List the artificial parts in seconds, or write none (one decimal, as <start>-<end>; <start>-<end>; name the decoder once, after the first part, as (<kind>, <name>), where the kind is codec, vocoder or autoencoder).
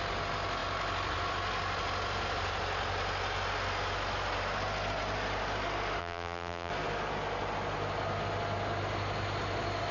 6.0-6.7 (vocoder, BigVGAN v2)